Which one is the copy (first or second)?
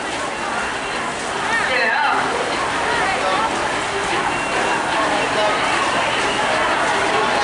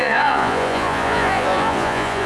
second